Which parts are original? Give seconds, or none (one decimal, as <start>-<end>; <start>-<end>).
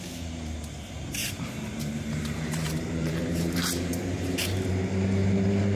0.0-1.2; 4.7-5.8